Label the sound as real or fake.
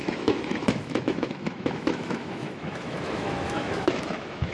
fake